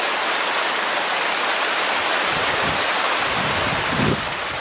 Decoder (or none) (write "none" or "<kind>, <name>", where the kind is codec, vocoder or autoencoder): none